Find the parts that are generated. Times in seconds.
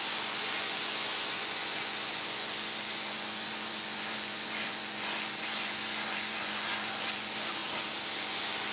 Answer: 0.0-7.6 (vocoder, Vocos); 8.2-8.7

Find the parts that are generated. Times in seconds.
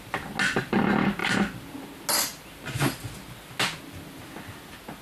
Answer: none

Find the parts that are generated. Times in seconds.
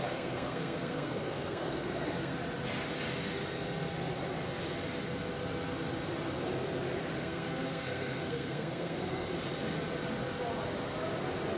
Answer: 0.0-2.3 (codec, SNAC); 7.2-9.3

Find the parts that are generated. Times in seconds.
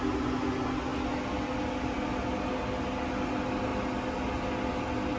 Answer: none